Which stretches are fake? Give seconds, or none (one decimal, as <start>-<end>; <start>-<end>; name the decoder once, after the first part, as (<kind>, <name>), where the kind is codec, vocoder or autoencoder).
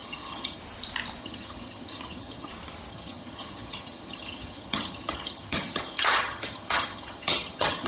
0.0-0.6 (vocoder, HiFi-GAN); 1.2-2.5; 2.9-7.9